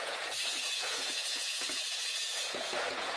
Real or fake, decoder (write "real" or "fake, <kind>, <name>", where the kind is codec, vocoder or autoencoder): fake, vocoder, Vocos